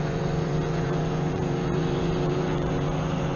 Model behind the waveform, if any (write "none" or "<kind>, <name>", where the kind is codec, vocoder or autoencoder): vocoder, Vocos